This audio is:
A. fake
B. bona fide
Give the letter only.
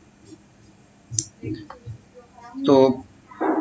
B